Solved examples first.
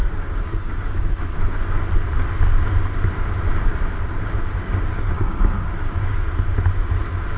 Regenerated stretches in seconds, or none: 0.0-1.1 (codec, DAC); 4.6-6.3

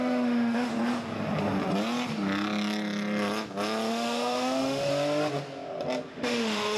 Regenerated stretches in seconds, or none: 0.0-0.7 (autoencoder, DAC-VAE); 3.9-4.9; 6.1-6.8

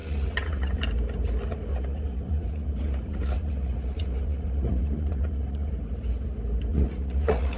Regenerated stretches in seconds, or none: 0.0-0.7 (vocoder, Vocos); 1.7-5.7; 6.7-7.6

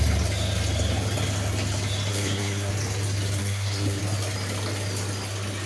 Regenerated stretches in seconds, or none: 2.1-2.7 (codec, SNAC); 3.4-4.0

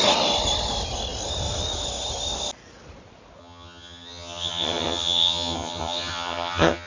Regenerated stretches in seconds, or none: 3.4-6.9 (vocoder, HiFi-GAN)

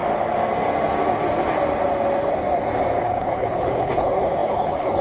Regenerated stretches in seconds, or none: 3.0-5.0 (codec, HILCodec)

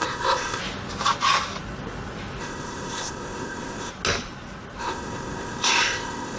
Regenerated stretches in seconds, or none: 0.0-0.6 (codec, ZipCodec); 2.4-3.9; 4.8-6.4